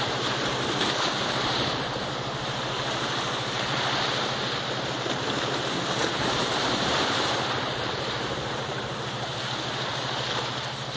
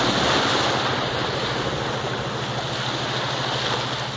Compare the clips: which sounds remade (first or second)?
first